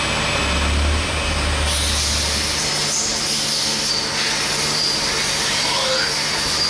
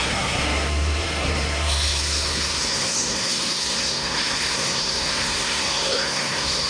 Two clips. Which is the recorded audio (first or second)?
first